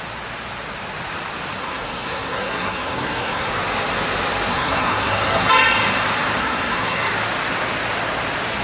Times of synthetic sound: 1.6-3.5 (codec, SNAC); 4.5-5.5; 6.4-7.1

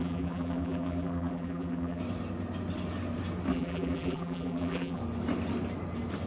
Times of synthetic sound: 0.0-2.0 (vocoder, BigVGAN v2); 3.5-5.0

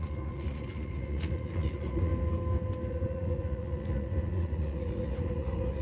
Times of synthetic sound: 0.0-2.1 (vocoder, Vocos); 2.9-5.8

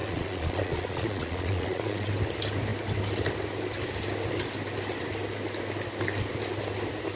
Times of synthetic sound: 0.0-2.1 (vocoder, Vocos)